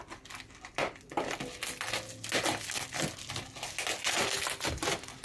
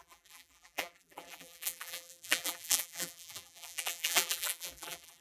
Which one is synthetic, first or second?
second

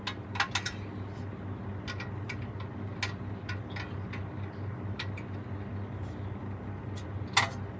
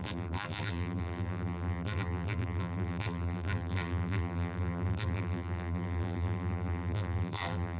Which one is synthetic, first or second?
second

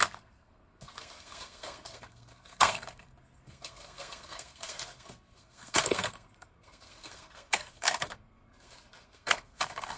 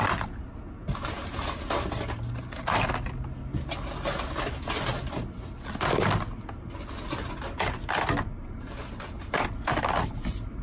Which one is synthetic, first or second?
first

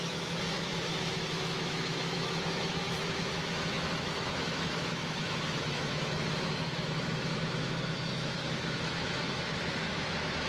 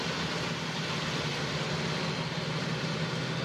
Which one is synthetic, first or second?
first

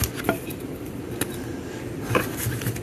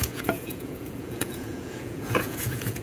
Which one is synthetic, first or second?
second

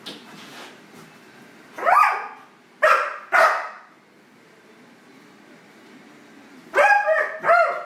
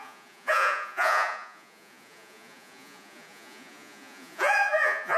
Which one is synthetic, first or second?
second